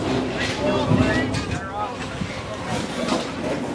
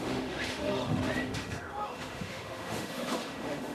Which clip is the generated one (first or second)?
second